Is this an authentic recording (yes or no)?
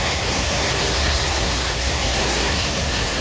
no